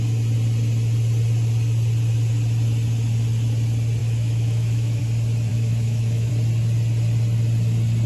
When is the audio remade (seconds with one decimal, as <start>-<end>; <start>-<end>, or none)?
4.0-5.0; 5.5-6.3